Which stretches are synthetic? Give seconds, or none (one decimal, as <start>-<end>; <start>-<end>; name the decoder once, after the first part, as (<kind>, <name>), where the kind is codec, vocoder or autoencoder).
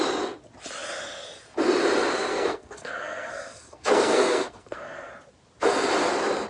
2.3-5.1 (codec, SNAC)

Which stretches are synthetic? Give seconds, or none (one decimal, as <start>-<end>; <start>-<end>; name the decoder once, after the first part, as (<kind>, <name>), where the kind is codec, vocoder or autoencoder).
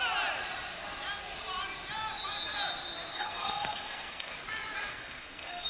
3.1-4.3 (codec, SNAC); 4.9-5.7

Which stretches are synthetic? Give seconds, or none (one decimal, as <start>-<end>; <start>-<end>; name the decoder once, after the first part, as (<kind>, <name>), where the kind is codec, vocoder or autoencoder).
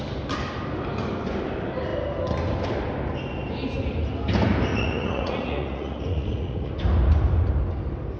4.7-6.7 (vocoder, Vocos)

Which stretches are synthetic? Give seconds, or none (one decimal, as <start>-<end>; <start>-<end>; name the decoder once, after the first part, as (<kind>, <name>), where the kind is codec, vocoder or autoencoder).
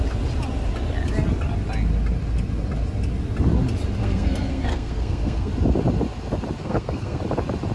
4.0-5.5 (codec, SNAC); 6.6-7.2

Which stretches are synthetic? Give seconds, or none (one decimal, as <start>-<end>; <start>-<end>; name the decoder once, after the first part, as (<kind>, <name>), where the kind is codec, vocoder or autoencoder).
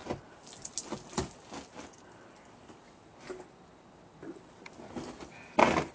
none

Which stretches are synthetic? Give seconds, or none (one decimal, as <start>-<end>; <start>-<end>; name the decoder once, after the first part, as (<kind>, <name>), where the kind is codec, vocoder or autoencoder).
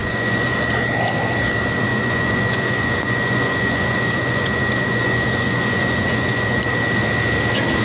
0.0-0.6 (vocoder, Vocos); 1.9-6.6